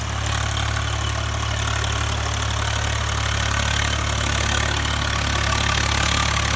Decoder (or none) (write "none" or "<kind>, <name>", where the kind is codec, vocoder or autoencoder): none